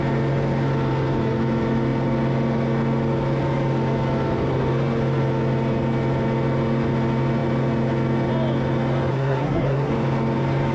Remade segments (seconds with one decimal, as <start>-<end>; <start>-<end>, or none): 9.1-9.9